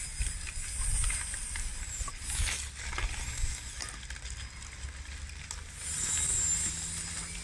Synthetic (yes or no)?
no